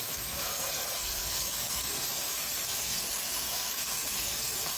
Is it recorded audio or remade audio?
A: remade